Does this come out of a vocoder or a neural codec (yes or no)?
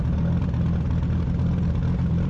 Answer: no